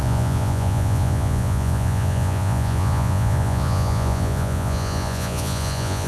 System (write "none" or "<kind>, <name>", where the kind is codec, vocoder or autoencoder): vocoder, Vocos